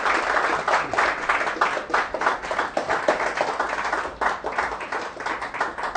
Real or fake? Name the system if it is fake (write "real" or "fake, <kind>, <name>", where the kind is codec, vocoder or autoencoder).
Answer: real